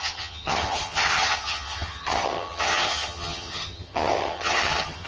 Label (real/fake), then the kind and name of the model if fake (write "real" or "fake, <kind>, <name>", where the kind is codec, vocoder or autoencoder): fake, vocoder, HiFi-GAN